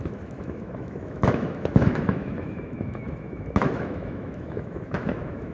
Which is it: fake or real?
fake